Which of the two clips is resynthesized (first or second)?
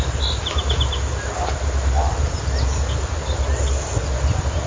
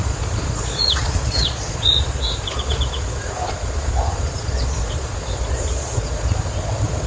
second